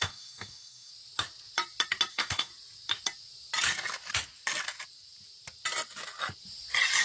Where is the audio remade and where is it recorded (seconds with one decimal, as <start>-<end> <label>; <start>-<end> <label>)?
0.0-0.9 remade; 0.9-2.1 recorded; 2.1-2.5 remade; 2.5-7.0 recorded